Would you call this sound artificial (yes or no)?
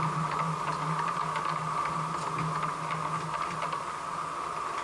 no